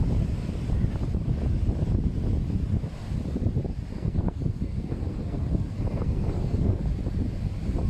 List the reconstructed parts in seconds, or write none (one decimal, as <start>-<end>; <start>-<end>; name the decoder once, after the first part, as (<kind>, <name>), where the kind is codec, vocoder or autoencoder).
3.9-6.8 (codec, SNAC)